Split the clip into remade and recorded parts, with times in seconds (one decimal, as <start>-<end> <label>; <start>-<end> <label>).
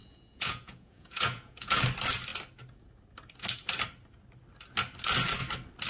0.0-1.8 remade; 1.8-5.9 recorded